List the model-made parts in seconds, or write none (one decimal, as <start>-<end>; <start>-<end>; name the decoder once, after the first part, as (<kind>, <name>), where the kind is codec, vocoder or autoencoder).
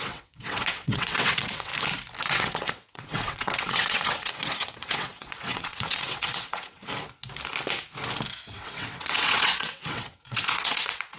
0.0-1.7 (vocoder, WaveNeXt); 2.2-6.8; 8.3-11.2